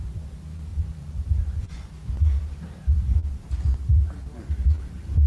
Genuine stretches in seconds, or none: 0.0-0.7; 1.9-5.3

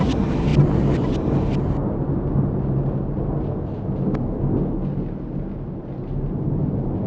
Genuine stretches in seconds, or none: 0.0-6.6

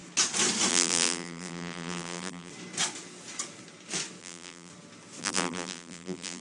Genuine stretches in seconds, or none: 0.0-0.7; 2.5-4.2; 4.7-5.2